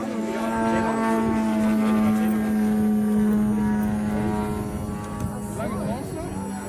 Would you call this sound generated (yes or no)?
no